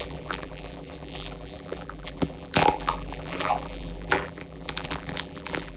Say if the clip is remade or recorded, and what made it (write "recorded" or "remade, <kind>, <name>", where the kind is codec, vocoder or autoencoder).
remade, vocoder, BigVGAN v2